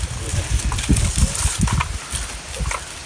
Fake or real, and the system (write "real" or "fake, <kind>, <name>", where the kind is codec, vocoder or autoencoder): real